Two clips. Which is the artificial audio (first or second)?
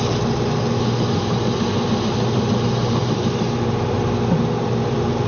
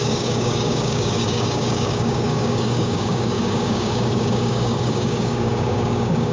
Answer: second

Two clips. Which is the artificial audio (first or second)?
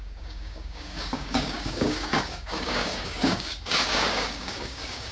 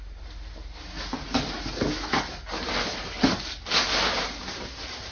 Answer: first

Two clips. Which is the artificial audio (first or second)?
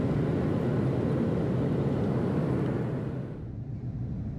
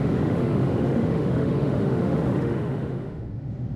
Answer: second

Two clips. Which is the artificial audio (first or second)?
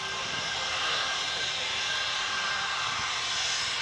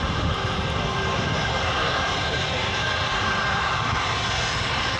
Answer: second